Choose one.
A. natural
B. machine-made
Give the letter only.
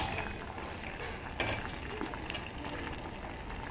A